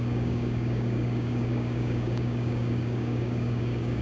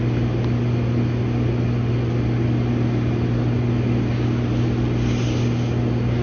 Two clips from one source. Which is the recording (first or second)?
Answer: second